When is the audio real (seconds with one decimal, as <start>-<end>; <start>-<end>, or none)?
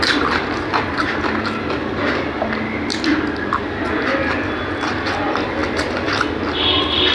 0.0-7.1